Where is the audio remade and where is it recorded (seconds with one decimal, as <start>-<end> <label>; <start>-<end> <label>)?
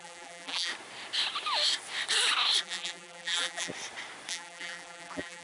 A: 0.0-0.7 remade; 0.7-2.6 recorded; 2.6-3.7 remade; 3.7-4.3 recorded; 4.3-5.4 remade